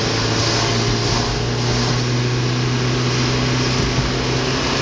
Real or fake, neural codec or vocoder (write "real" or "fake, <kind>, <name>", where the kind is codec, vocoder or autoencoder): real